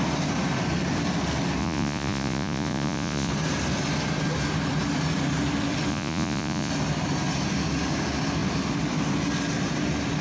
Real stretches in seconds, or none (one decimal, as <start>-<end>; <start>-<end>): 0.0-1.6; 3.3-5.9; 6.7-10.2